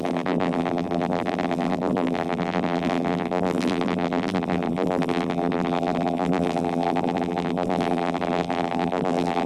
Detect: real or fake fake